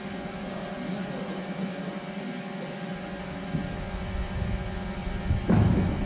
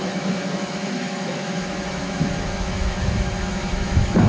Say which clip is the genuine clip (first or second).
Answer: first